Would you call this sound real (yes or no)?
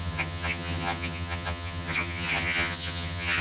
no